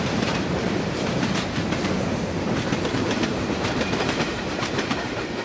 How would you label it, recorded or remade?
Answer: remade